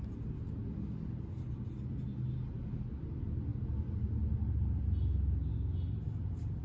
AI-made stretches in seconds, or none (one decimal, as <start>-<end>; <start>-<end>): none